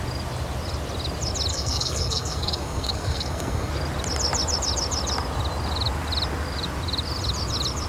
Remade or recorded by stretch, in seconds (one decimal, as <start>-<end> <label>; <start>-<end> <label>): 0.0-1.5 recorded; 1.5-3.7 remade; 3.7-7.9 recorded